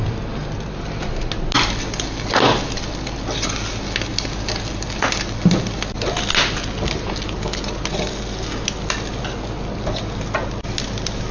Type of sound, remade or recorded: recorded